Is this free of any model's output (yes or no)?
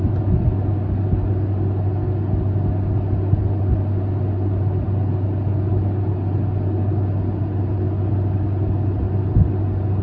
yes